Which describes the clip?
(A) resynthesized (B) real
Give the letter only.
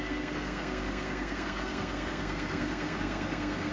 A